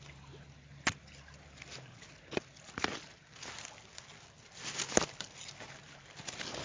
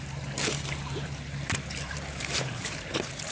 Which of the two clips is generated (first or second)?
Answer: second